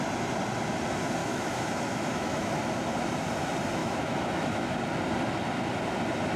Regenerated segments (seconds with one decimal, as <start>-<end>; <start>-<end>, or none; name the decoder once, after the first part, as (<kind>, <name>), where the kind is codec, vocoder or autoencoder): 1.2-2.5 (autoencoder, DAC-VAE); 3.8-4.6